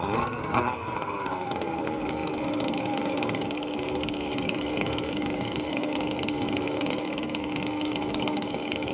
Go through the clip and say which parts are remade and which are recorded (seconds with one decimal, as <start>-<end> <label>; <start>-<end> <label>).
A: 0.0-8.9 remade

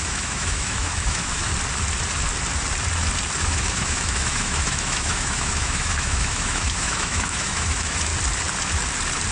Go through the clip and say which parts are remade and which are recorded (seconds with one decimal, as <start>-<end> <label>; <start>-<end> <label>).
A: 0.0-1.5 remade; 1.5-3.4 recorded; 3.4-8.1 remade; 8.1-9.3 recorded

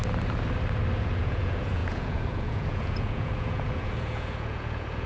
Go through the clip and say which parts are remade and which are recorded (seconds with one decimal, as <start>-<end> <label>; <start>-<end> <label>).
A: 0.0-1.0 recorded; 1.0-5.1 remade

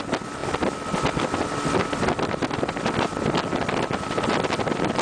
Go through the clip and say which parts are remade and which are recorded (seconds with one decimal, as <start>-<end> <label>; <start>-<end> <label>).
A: 0.0-5.0 recorded

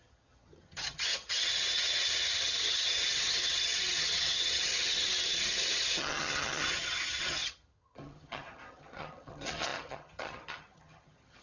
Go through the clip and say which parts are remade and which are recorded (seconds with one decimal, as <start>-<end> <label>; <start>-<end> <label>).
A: 0.0-11.4 remade

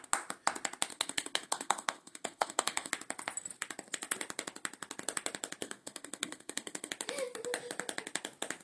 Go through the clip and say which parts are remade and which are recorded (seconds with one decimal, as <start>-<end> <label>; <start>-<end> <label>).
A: 0.0-0.9 recorded; 0.9-2.9 remade; 2.9-5.6 recorded; 5.6-6.9 remade; 6.9-8.6 recorded

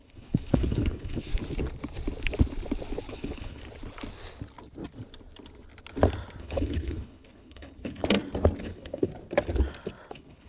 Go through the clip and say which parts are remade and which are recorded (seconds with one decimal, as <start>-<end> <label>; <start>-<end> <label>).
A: 0.0-1.3 remade; 1.3-3.1 recorded; 3.1-3.6 remade; 3.6-6.4 recorded; 6.4-8.0 remade; 8.0-8.6 recorded; 8.6-9.1 remade; 9.1-10.1 recorded; 10.1-10.5 remade